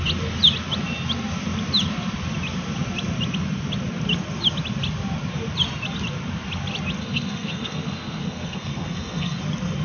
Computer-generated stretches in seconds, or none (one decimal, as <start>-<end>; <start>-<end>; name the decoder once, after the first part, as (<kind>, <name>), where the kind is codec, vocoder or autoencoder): 7.0-9.4 (codec, SNAC)